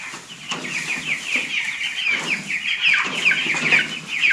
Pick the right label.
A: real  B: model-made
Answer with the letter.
A